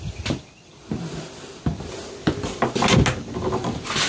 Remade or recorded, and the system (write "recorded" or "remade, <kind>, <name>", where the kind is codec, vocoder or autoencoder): recorded